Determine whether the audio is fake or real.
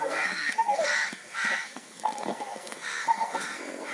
fake